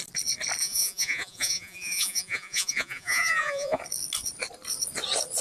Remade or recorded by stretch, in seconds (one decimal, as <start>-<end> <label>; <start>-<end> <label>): 0.0-0.6 recorded; 0.6-3.8 remade; 3.8-5.4 recorded